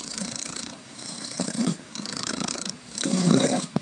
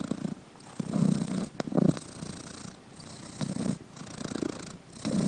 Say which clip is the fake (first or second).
first